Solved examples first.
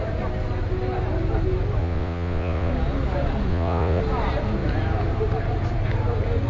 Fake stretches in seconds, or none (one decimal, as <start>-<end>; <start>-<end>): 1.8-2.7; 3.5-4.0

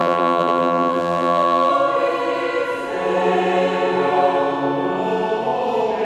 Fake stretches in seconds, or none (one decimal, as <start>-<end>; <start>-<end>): 0.0-1.7

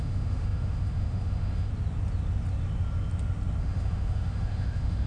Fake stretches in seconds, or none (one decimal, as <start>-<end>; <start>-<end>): 0.0-1.7; 3.6-5.1